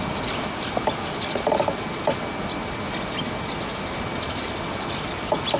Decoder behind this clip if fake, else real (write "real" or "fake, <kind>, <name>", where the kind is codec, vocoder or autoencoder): real